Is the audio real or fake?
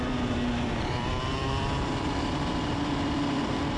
fake